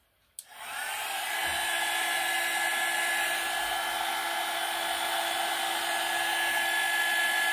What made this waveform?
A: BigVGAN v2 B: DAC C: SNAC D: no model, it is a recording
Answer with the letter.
D